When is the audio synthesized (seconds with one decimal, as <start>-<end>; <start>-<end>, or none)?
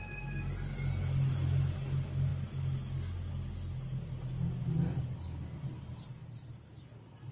6.2-6.7